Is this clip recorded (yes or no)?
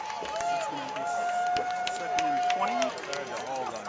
yes